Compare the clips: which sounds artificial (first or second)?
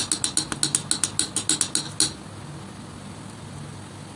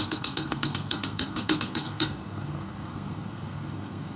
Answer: second